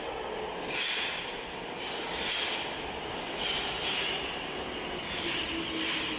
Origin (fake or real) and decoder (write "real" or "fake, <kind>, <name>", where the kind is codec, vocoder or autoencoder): real